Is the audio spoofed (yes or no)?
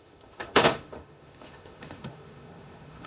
yes